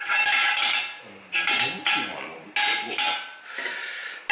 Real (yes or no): yes